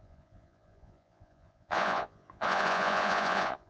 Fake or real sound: fake